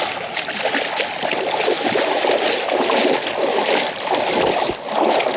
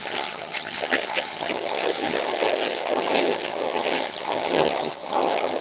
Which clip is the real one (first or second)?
first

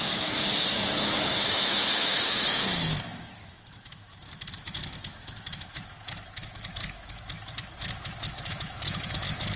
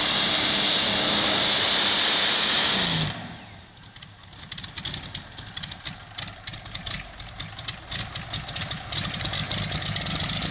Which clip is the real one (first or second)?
second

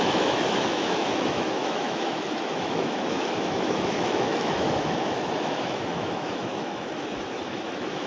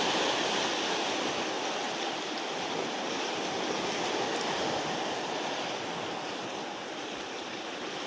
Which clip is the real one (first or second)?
second